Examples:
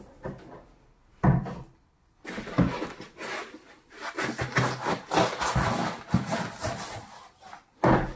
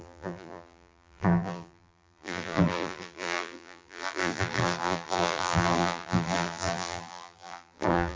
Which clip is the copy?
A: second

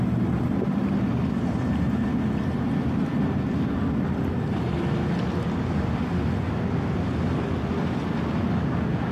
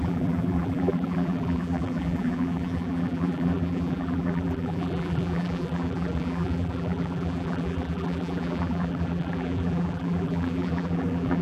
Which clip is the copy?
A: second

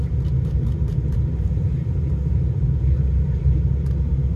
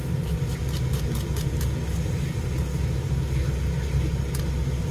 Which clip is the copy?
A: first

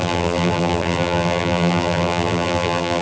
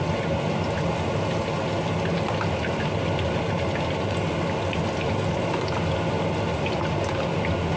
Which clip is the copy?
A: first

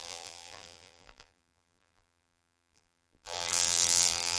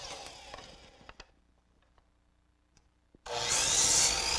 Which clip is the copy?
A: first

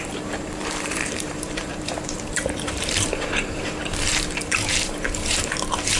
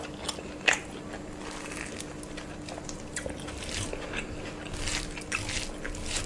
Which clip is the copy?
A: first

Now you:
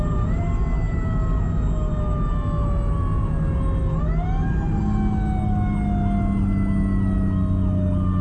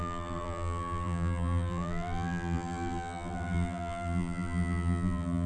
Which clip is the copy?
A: second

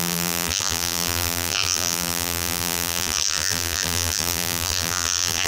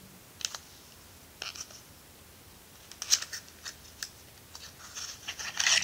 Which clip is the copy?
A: first